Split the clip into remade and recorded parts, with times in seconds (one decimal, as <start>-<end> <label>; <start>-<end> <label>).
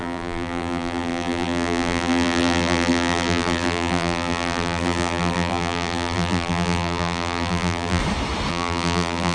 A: 0.0-8.0 remade; 8.0-8.5 recorded; 8.5-9.3 remade